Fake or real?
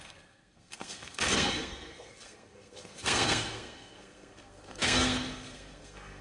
fake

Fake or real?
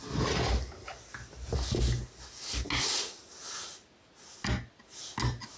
real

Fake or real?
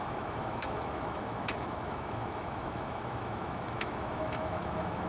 fake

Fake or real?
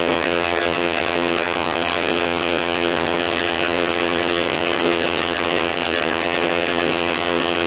fake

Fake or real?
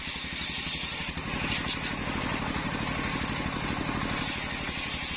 real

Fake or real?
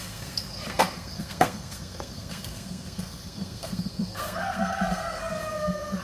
fake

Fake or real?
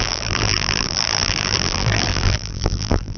fake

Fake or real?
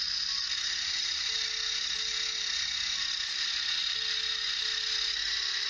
real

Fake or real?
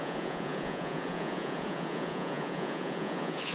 fake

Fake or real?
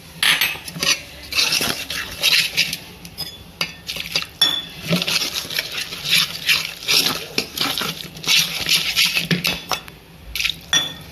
real